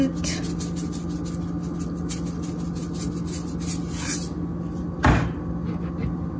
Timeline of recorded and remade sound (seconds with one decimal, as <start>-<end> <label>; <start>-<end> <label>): 0.0-6.4 recorded